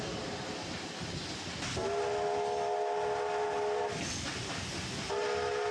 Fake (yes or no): no